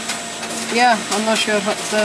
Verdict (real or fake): real